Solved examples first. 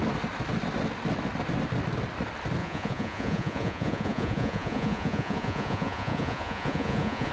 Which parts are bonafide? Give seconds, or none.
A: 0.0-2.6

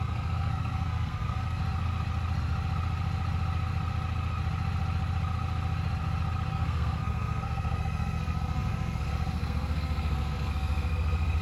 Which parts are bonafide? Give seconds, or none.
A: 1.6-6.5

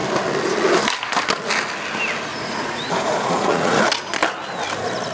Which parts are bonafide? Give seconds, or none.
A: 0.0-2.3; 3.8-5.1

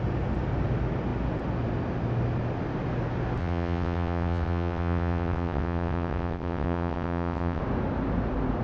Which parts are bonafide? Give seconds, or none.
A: 0.0-3.4; 7.6-8.6

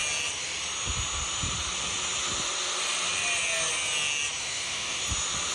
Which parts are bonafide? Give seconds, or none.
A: 0.0-4.4; 5.0-5.5